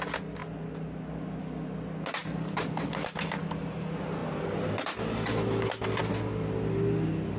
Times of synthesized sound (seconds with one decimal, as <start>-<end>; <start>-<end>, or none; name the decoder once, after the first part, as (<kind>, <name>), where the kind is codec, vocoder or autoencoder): 2.2-3.6 (vocoder, BigVGAN v2)